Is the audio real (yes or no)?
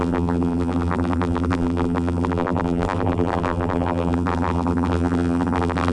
no